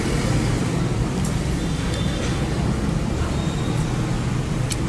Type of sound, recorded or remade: recorded